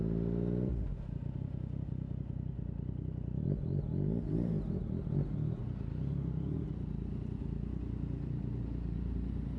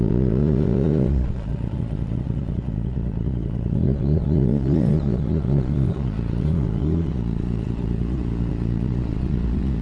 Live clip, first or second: first